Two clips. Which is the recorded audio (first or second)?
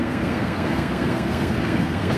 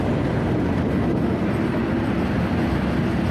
second